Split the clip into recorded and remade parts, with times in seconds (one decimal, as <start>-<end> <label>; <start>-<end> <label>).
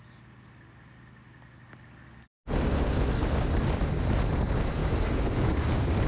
0.0-4.8 recorded; 4.8-6.1 remade